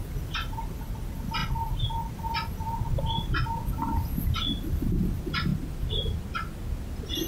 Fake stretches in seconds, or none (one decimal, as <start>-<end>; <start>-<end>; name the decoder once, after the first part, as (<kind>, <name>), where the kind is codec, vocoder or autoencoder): none